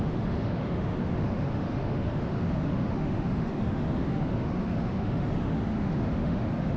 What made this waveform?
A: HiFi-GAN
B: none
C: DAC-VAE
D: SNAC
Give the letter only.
C